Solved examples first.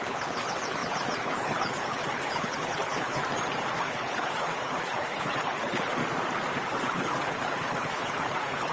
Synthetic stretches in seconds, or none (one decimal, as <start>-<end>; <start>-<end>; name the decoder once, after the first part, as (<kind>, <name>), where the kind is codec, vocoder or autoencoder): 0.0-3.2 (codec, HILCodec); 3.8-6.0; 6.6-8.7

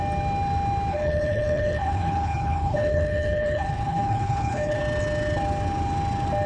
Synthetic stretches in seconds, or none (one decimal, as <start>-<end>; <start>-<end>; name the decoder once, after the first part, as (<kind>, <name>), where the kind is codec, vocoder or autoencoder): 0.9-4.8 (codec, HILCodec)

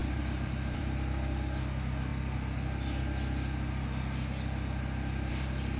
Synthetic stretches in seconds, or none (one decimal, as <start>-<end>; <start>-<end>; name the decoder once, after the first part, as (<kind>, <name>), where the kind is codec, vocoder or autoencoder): 0.0-0.8 (vocoder, BigVGAN v2)

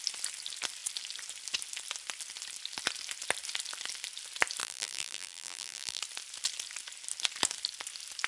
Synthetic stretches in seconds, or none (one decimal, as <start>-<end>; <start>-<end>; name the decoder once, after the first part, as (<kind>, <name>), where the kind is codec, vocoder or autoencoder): 4.6-6.0 (vocoder, BigVGAN v2)